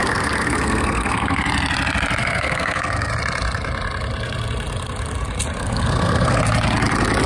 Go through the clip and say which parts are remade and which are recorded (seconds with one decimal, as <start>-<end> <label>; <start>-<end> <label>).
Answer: 0.0-1.4 remade; 1.4-2.2 recorded; 2.2-3.1 remade; 3.1-5.6 recorded; 5.6-6.4 remade; 6.4-7.3 recorded